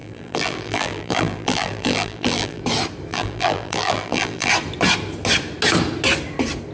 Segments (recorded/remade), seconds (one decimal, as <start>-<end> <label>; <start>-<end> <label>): 0.0-2.6 remade; 2.6-3.1 recorded; 3.1-4.5 remade; 4.5-6.7 recorded